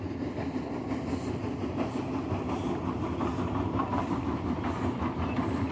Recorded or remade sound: recorded